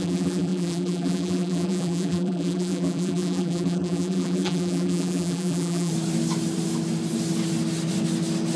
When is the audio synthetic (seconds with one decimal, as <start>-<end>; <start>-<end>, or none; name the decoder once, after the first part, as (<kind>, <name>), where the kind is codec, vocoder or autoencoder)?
0.0-5.9 (vocoder, BigVGAN v2)